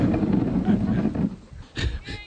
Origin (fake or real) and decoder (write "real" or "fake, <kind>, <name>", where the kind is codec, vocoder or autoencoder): real